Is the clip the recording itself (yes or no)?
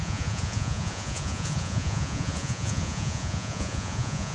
no